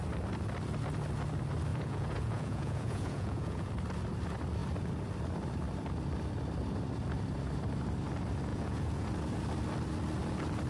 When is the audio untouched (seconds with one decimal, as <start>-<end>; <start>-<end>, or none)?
0.0-1.7; 3.7-8.5; 9.1-10.7